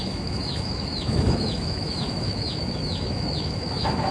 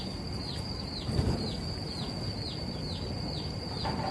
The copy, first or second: first